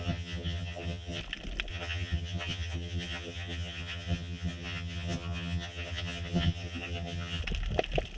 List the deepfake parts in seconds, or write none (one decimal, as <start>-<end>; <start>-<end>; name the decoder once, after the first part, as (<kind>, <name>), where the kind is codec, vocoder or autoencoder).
0.0-1.2 (vocoder, HiFi-GAN); 1.7-7.4